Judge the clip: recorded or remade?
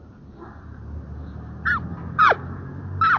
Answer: recorded